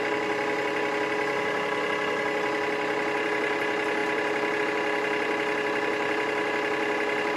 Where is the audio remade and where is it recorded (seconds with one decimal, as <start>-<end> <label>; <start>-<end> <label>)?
0.0-7.4 recorded